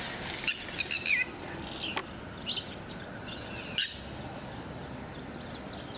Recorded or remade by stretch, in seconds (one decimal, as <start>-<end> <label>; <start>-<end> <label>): 0.0-6.0 recorded